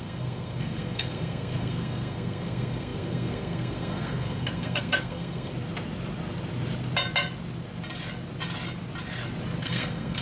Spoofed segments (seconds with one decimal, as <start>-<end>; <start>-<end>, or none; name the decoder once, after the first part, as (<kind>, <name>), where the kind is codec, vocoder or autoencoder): 0.0-5.5 (codec, SNAC); 9.6-10.2